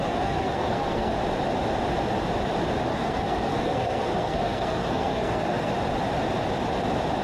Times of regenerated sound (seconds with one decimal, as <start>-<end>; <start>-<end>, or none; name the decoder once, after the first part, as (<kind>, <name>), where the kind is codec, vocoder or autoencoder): 0.0-1.1 (codec, SNAC); 2.9-5.7